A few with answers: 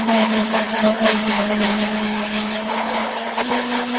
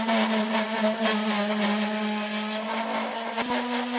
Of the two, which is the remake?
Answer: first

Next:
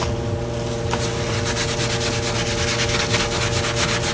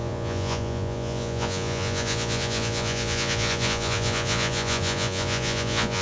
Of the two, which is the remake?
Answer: second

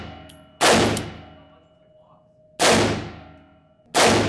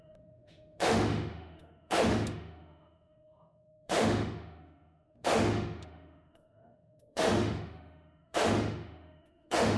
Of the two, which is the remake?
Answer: second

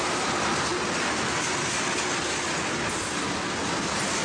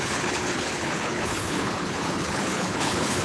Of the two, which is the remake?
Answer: second